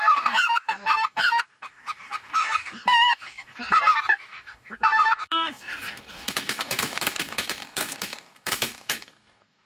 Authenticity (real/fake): fake